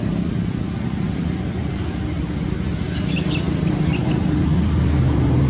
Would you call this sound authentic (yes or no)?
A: yes